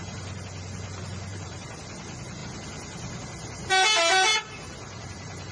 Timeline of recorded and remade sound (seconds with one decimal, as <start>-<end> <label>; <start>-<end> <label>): 0.0-1.3 recorded; 1.3-1.8 remade; 1.8-4.3 recorded; 4.3-5.5 remade